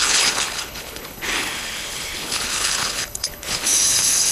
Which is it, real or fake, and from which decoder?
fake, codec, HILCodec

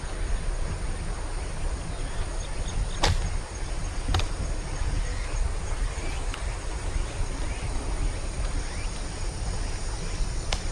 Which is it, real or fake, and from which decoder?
real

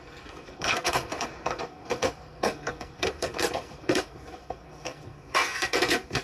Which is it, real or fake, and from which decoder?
fake, codec, SNAC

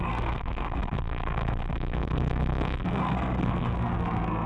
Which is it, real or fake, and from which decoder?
fake, codec, SNAC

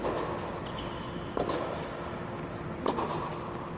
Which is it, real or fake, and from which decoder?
real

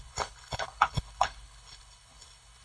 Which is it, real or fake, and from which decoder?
fake, codec, HILCodec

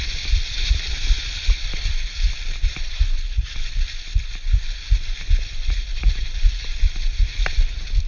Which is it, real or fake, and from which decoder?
real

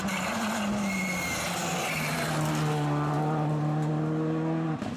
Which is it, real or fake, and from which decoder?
real